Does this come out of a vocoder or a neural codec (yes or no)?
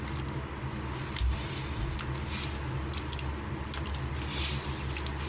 no